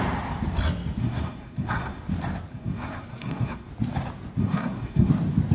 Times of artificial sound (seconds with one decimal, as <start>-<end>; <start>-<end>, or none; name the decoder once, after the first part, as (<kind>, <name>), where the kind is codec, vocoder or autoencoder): 1.0-2.0 (codec, SNAC); 2.5-3.7; 4.4-5.1